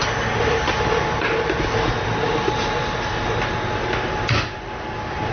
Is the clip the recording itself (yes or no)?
yes